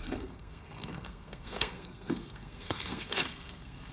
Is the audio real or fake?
fake